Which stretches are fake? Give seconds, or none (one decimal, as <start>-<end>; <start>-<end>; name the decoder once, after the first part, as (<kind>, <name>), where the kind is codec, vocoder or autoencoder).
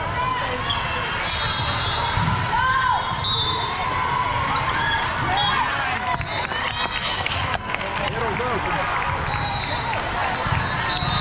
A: 7.0-8.0 (codec, SNAC)